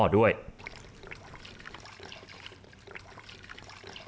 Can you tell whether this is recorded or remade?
remade